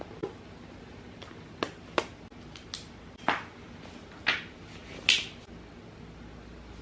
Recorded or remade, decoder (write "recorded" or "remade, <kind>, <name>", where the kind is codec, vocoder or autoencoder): recorded